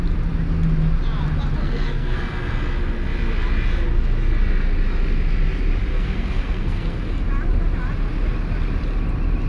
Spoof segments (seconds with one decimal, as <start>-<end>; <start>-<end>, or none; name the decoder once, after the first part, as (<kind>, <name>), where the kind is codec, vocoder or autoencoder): 1.6-2.2 (codec, SNAC); 5.9-7.0